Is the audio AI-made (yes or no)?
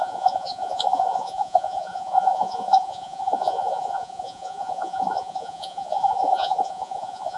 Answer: yes